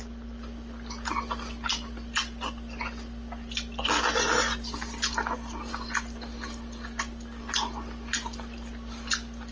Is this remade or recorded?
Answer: recorded